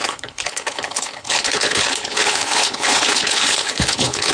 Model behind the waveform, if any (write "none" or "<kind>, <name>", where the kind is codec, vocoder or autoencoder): codec, HILCodec